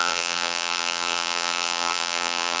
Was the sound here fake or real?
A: fake